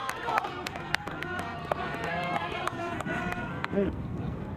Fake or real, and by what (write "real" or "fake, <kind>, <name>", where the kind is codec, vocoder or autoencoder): fake, codec, SNAC